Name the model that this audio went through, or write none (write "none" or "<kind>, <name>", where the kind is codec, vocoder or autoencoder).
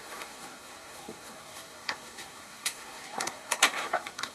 codec, SNAC